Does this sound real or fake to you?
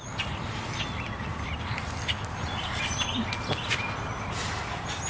real